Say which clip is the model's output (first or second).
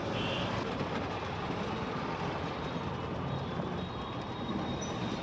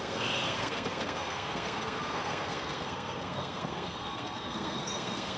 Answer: second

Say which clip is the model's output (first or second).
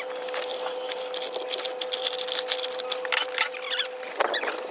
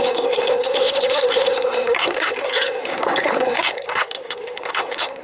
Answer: second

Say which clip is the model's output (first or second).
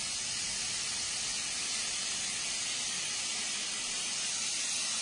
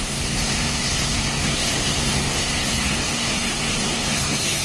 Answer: second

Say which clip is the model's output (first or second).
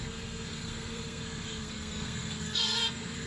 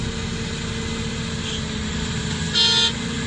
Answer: first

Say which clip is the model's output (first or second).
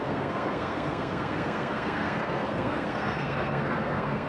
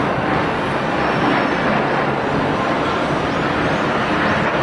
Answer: first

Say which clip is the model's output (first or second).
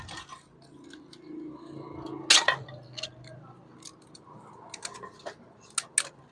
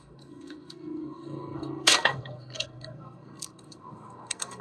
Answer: second